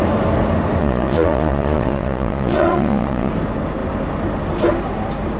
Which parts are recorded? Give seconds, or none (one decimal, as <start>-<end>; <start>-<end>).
0.0-0.8; 3.3-5.4